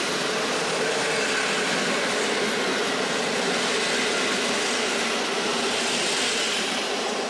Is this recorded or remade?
recorded